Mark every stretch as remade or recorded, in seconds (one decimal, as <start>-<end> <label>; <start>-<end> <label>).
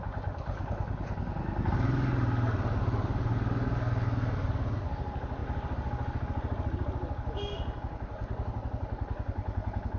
0.0-10.0 recorded